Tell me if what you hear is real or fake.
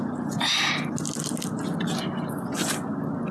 real